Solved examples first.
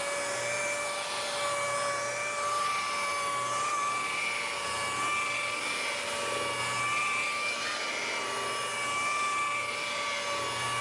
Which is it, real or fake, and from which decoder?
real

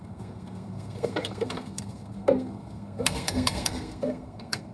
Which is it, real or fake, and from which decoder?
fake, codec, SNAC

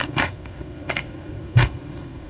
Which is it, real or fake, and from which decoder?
fake, codec, SNAC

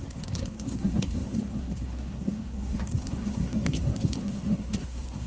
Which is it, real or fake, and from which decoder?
fake, codec, SNAC